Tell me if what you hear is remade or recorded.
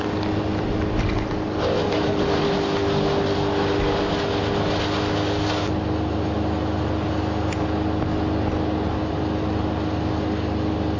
recorded